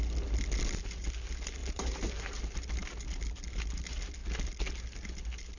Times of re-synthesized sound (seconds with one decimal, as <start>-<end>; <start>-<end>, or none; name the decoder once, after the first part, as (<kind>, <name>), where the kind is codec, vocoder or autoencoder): 1.6-2.4 (vocoder, BigVGAN v2)